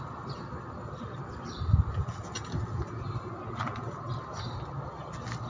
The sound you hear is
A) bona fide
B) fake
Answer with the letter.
A